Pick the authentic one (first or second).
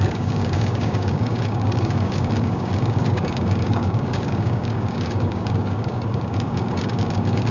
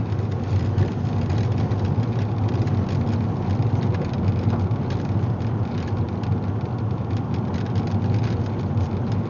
second